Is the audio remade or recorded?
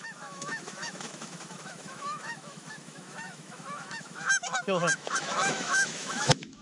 remade